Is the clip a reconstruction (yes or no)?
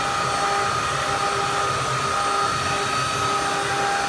no